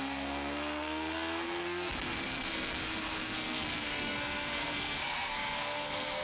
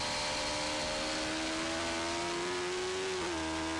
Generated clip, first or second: first